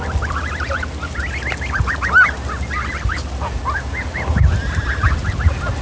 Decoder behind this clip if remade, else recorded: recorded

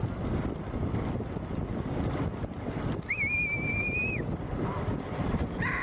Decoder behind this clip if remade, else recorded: recorded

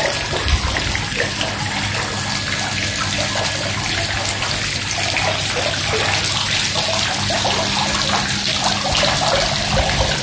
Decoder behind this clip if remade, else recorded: recorded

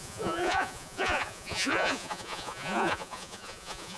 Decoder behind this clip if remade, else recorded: remade, vocoder, Vocos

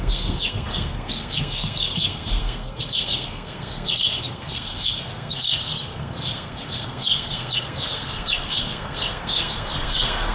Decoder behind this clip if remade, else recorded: remade, codec, SNAC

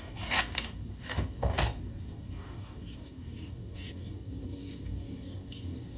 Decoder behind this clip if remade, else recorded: remade, codec, DAC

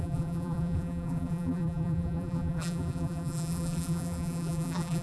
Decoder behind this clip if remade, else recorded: remade, vocoder, BigVGAN v2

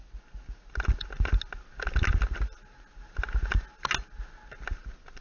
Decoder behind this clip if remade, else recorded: recorded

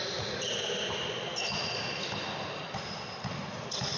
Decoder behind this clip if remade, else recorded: recorded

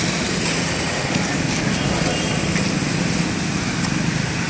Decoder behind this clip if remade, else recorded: recorded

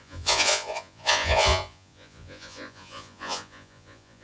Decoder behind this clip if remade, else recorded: remade, vocoder, Vocos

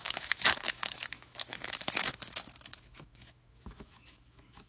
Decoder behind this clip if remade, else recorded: remade, autoencoder, DAC-VAE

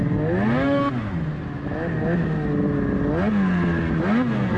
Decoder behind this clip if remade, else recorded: recorded